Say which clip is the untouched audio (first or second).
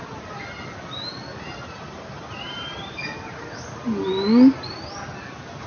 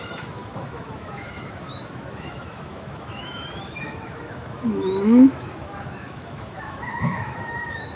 first